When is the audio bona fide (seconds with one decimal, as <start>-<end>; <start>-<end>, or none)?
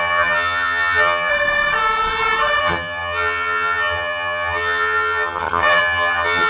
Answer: 1.3-2.6